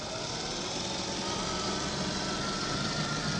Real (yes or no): yes